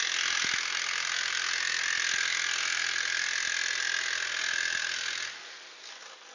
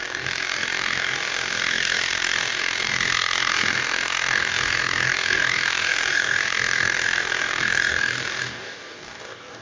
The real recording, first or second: first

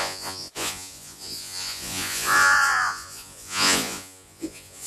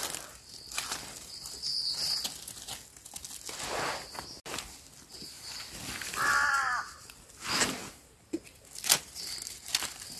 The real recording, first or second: second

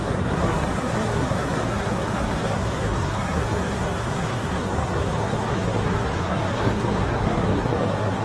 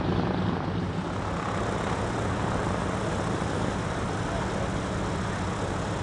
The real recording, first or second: second